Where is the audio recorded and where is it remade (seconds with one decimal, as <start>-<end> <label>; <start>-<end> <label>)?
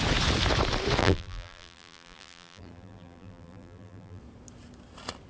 0.0-1.0 recorded; 1.0-4.2 remade; 4.2-5.3 recorded